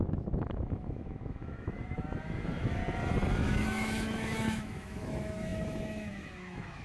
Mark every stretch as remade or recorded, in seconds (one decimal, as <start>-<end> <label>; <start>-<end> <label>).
0.0-2.8 remade; 2.8-3.3 recorded; 3.3-6.8 remade